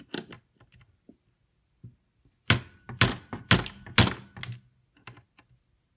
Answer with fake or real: real